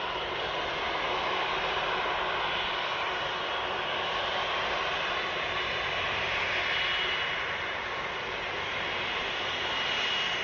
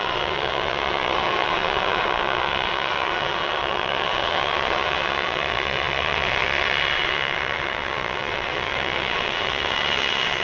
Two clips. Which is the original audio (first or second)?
first